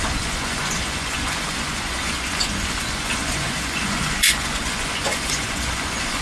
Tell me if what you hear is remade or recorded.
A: remade